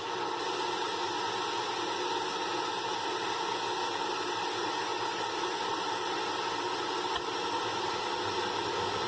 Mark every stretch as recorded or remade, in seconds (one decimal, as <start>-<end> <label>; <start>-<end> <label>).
0.0-9.1 recorded